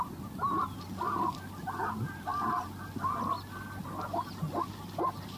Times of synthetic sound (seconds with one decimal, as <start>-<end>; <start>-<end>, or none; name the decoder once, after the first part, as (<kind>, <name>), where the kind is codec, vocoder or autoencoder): none